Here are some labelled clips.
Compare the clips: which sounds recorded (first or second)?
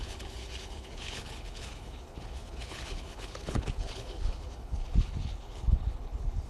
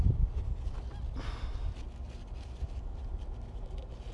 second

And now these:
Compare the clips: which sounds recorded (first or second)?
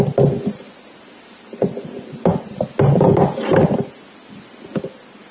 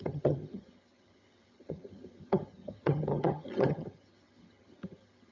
first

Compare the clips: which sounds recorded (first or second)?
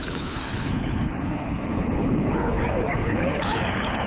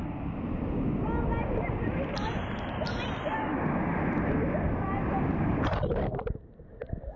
second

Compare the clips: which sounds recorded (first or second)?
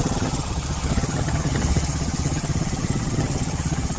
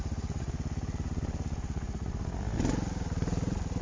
second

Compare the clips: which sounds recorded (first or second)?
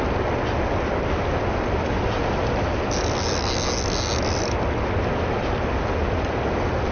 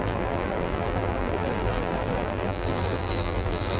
first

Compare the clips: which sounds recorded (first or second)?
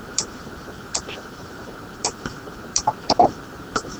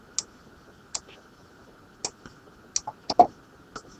second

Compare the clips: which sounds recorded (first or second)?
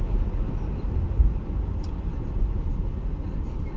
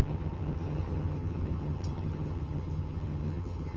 first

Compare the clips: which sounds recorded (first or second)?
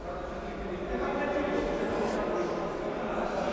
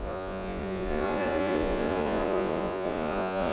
first